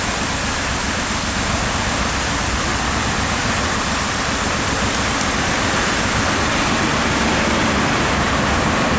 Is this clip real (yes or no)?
yes